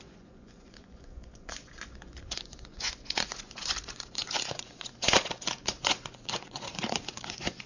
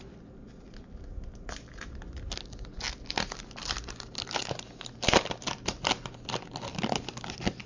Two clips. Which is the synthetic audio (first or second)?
first